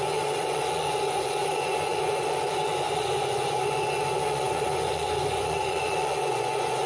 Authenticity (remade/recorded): remade